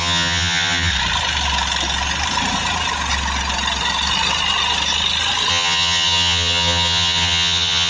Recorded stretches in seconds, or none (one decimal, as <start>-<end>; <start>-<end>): 0.9-5.5